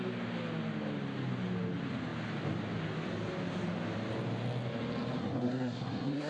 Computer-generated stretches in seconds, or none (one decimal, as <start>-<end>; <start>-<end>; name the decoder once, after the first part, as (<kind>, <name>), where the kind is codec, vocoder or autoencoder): 5.2-6.3 (codec, SNAC)